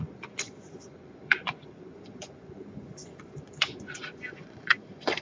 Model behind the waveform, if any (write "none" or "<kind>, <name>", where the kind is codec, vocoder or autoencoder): vocoder, Vocos